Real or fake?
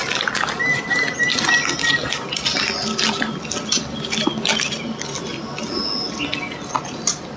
real